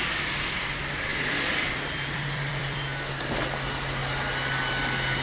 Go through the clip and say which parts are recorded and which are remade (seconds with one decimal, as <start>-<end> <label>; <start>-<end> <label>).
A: 0.0-1.1 recorded; 1.1-2.8 remade; 2.8-4.0 recorded; 4.0-4.5 remade; 4.5-5.2 recorded